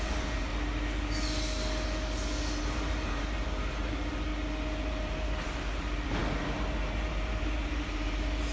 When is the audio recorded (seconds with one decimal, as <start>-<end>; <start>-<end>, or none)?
0.5-2.6; 4.3-4.9